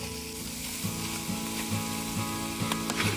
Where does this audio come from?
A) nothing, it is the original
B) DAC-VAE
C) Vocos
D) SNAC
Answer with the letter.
A